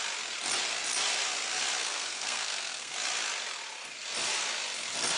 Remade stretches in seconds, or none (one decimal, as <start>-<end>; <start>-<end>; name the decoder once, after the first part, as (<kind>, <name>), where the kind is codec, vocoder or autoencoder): 1.8-2.9 (codec, SNAC)